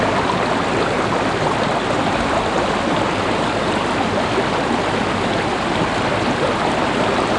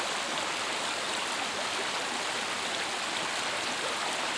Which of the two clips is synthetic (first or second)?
first